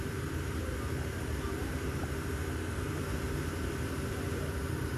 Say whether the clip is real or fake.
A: fake